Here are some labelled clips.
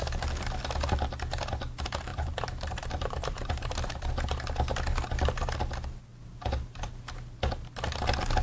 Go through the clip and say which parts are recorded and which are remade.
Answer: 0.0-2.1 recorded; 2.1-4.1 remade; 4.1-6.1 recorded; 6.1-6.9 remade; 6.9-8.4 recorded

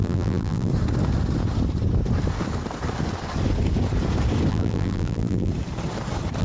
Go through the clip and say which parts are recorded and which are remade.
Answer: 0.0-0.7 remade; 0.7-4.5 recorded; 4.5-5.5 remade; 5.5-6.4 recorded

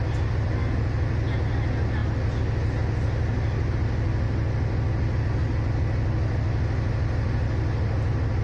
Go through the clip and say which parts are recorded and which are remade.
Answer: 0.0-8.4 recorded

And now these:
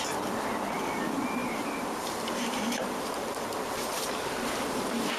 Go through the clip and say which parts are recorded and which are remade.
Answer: 0.0-1.4 recorded; 1.4-4.5 remade; 4.5-5.2 recorded

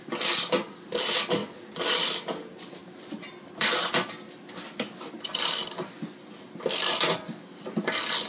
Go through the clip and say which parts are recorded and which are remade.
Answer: 0.0-8.3 recorded

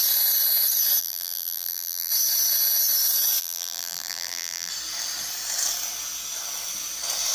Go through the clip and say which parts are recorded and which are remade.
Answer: 0.0-1.0 recorded; 1.0-2.1 remade; 2.1-3.4 recorded; 3.4-4.7 remade; 4.7-7.3 recorded

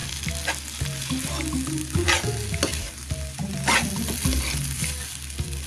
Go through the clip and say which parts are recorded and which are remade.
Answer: 0.0-0.5 remade; 0.5-1.0 recorded; 1.0-1.8 remade; 1.8-2.7 recorded; 2.7-5.7 remade

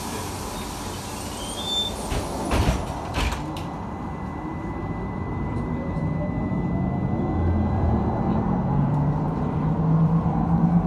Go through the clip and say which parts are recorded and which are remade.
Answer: 0.0-2.8 recorded; 2.8-6.5 remade; 6.5-7.7 recorded; 7.7-10.3 remade; 10.3-10.9 recorded